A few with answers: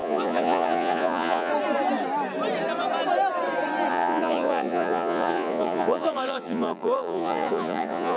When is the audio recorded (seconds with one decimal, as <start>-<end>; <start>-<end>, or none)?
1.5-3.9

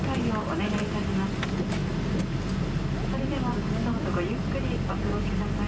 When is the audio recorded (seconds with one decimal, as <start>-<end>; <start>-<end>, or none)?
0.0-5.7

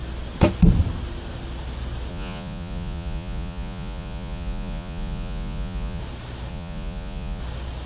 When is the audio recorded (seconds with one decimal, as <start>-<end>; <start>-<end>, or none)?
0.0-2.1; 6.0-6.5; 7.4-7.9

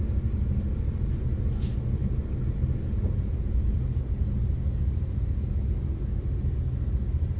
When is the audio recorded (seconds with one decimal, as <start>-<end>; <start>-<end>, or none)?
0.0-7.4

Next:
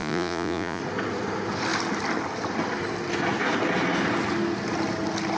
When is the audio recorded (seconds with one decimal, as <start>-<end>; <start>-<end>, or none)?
0.8-5.4

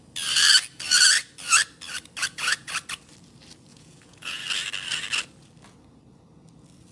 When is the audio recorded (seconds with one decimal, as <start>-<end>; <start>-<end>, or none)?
0.0-2.2; 2.7-3.7; 4.4-6.9

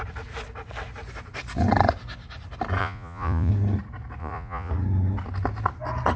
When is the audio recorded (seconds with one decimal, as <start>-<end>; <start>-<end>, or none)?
0.0-2.8; 3.5-4.2; 4.7-6.2